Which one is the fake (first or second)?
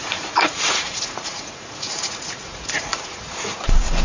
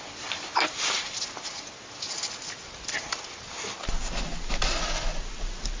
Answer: first